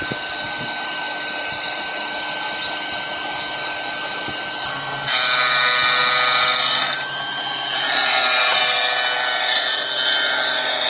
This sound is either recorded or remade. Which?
recorded